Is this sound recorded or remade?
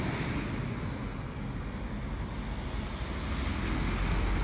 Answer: recorded